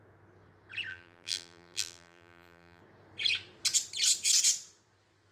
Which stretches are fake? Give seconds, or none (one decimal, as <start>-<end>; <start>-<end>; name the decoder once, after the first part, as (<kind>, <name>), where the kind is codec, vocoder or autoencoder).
0.9-2.8 (vocoder, BigVGAN v2)